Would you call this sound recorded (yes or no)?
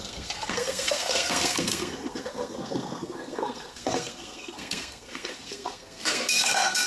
no